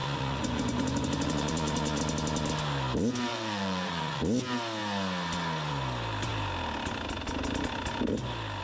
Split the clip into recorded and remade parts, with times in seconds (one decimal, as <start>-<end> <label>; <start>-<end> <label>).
0.0-2.0 remade; 2.0-3.3 recorded; 3.3-4.2 remade; 4.2-8.6 recorded